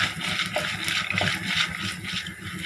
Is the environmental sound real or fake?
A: real